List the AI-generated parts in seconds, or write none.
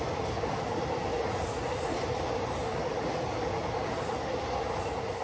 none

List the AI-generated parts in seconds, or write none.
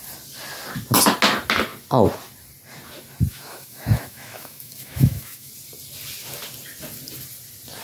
3.3-5.5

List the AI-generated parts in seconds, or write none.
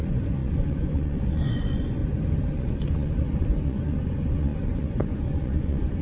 0.0-2.0; 2.5-6.0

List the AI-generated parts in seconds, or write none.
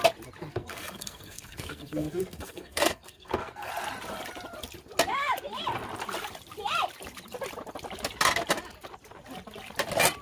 0.5-3.7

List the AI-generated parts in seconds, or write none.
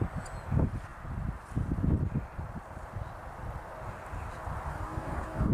4.7-5.5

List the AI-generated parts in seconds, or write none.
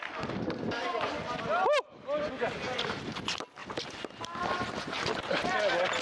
none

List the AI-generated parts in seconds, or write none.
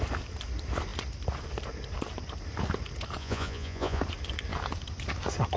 3.2-4.0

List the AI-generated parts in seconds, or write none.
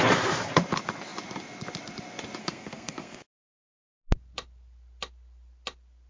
2.4-3.7